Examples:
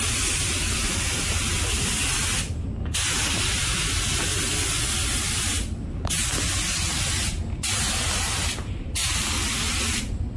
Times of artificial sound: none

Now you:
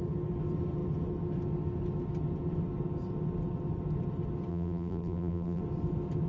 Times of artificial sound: 4.5-5.6

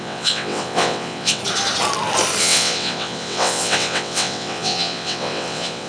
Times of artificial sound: 0.0-1.4; 2.4-5.9

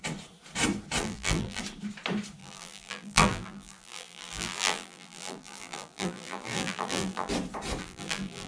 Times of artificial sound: 1.0-1.6; 2.4-7.3; 7.8-8.5

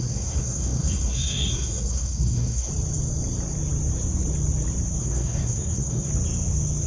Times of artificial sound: 0.0-2.7; 5.0-6.1